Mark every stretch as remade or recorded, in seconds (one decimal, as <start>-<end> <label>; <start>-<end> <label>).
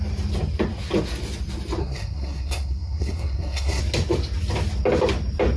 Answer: 0.0-1.8 recorded; 1.8-3.8 remade; 3.8-5.6 recorded